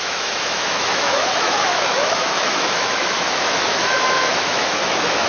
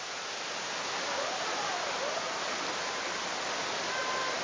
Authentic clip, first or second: second